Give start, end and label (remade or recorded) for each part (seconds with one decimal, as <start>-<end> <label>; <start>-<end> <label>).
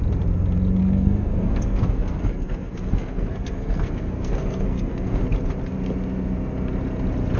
0.0-0.8 recorded; 0.8-5.2 remade; 5.2-7.4 recorded